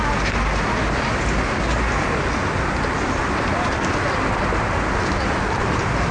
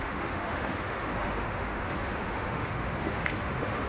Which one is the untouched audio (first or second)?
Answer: first